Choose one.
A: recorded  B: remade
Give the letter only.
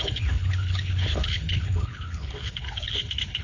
B